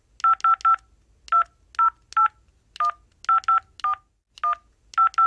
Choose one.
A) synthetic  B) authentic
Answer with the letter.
B